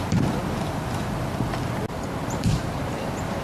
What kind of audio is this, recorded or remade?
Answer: remade